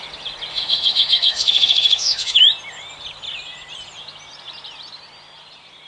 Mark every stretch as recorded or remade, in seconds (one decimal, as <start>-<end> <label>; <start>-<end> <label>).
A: 0.0-0.5 recorded; 0.5-2.4 remade; 2.4-5.9 recorded